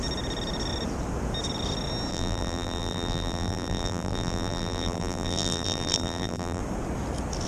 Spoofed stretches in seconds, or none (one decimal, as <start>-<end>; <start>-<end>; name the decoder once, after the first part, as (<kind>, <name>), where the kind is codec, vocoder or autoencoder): 2.1-6.6 (vocoder, BigVGAN v2)